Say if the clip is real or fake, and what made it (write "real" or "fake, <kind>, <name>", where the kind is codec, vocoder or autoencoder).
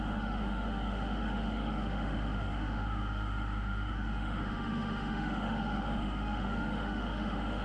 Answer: fake, autoencoder, DAC-VAE